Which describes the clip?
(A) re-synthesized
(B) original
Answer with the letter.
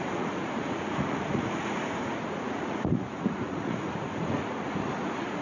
A